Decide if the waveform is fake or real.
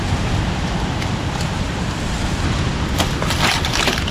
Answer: fake